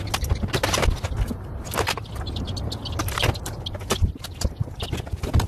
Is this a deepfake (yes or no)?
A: no